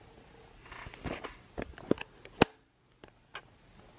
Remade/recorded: recorded